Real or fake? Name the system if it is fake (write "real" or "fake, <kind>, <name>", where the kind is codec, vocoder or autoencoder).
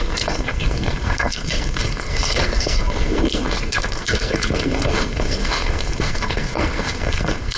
fake, codec, SNAC